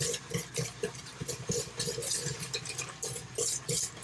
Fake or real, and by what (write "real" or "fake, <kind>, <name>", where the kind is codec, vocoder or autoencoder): real